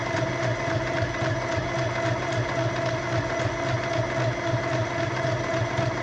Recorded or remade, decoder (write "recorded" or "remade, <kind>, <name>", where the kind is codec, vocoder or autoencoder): recorded